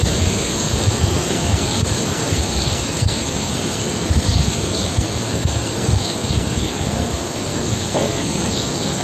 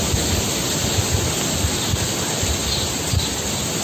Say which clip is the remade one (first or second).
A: first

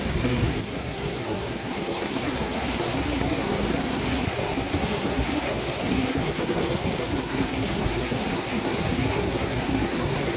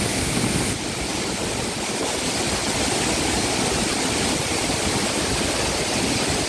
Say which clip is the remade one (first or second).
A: first